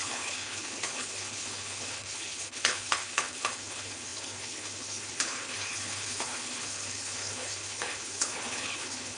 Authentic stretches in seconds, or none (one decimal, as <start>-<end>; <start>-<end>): none